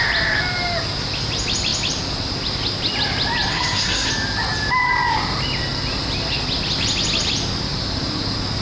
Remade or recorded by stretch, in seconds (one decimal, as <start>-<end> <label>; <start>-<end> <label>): 0.0-3.5 recorded; 3.5-4.1 remade; 4.1-8.6 recorded